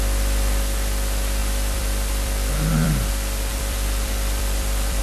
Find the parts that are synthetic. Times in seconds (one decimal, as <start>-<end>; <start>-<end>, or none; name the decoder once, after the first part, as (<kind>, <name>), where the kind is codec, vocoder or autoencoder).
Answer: 1.4-3.1 (vocoder, BigVGAN v2); 3.5-5.0